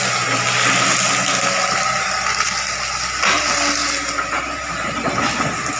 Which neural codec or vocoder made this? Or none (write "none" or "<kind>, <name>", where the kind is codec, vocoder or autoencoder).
none